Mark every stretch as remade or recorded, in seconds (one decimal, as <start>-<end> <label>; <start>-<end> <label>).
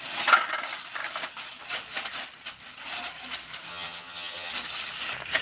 0.0-3.7 recorded; 3.7-4.5 remade; 4.5-5.4 recorded